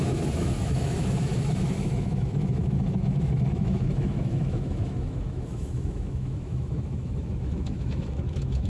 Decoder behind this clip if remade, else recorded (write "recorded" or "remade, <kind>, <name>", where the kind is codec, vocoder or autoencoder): remade, autoencoder, DAC-VAE